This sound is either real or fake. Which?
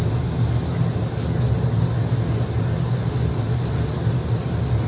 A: real